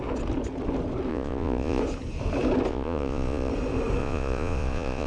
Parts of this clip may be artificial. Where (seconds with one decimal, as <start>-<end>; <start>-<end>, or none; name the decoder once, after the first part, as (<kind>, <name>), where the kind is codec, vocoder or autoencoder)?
1.1-1.8 (vocoder, Vocos); 2.7-3.5; 4.0-5.1